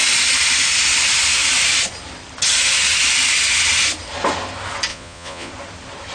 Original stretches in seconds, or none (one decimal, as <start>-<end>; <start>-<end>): 0.0-4.9; 5.5-6.1